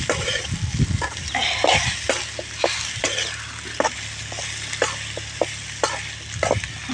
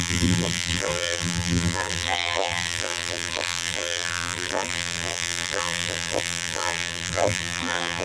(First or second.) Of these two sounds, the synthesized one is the second